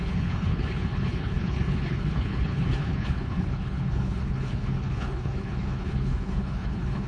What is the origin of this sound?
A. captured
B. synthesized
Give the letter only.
B